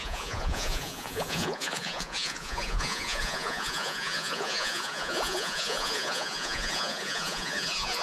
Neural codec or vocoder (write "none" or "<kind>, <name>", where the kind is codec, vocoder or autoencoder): vocoder, Vocos